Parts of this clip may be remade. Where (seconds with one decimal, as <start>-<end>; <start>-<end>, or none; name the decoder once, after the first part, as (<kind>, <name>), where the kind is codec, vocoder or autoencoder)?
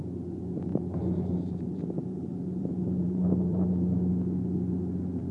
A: 0.7-3.7 (vocoder, BigVGAN v2)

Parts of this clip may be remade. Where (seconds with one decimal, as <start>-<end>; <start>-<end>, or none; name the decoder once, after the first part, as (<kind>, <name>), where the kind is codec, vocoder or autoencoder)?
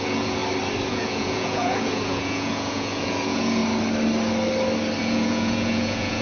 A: 0.0-0.4 (vocoder, Vocos); 0.9-3.6; 5.0-6.2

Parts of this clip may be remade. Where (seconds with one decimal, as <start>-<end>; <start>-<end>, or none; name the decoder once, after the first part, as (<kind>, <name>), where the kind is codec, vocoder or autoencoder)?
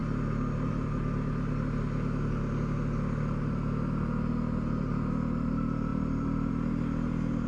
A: 5.9-6.5 (vocoder, BigVGAN v2)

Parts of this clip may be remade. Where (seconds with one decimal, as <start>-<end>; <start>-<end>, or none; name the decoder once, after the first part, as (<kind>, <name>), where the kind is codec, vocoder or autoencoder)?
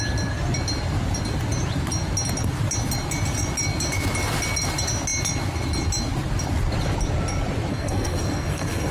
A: 7.7-8.9 (codec, SNAC)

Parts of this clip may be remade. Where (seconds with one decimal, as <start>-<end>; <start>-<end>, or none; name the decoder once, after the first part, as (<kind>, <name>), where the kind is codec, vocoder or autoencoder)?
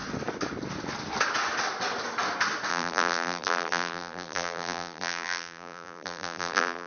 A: 2.7-6.9 (vocoder, BigVGAN v2)